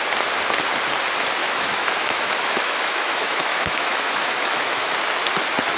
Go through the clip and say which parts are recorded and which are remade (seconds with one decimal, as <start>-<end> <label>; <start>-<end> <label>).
0.0-1.4 recorded; 1.4-4.9 remade; 4.9-5.8 recorded